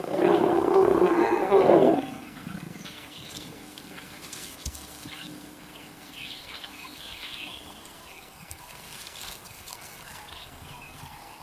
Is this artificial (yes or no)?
yes